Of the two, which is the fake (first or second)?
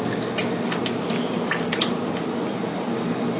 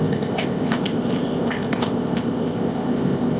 second